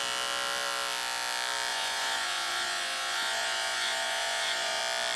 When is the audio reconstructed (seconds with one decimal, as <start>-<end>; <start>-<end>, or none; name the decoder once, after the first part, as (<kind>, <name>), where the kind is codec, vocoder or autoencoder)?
1.7-4.8 (vocoder, Vocos)